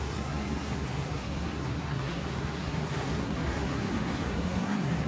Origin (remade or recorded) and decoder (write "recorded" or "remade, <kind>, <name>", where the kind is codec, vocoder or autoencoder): remade, codec, SNAC